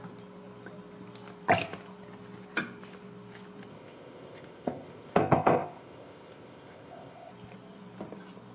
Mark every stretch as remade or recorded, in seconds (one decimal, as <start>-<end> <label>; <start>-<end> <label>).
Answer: 0.0-3.7 recorded; 3.7-7.3 remade; 7.3-8.5 recorded